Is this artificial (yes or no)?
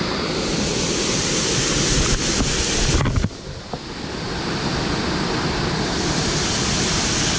no